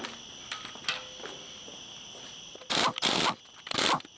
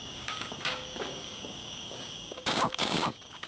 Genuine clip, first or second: first